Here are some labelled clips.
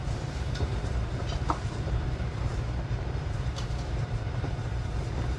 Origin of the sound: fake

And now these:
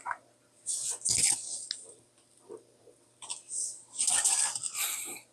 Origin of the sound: real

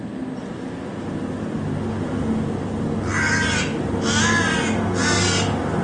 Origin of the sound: real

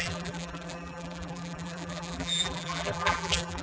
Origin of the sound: fake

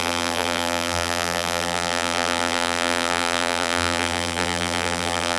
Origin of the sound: fake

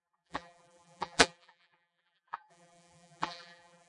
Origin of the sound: fake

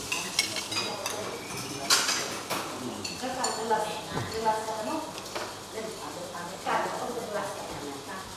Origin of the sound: real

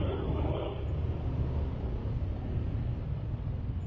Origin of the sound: real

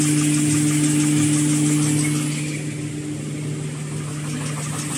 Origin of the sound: real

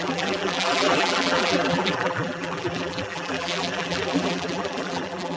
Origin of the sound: fake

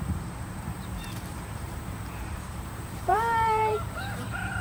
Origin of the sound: fake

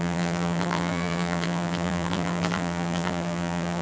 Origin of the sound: fake